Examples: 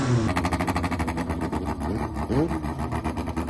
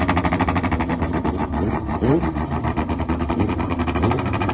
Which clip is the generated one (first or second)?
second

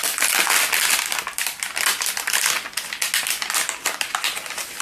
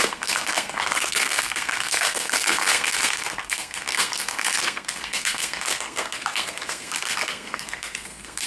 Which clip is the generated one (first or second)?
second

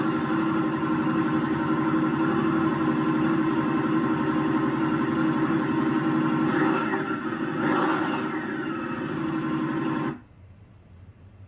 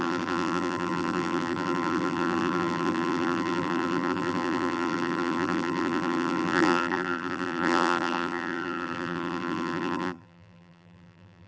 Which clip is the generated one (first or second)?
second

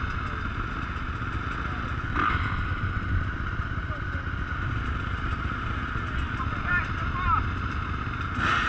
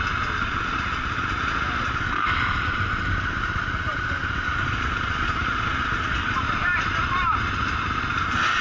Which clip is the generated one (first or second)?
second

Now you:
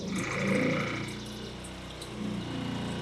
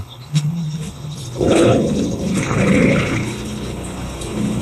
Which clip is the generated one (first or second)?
second